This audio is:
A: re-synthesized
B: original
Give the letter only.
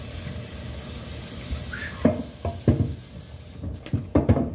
B